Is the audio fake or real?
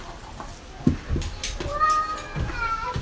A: real